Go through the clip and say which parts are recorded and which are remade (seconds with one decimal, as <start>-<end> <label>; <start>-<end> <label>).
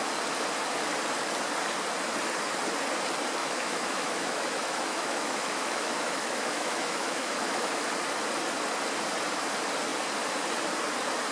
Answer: 0.0-3.4 recorded; 3.4-7.8 remade; 7.8-11.3 recorded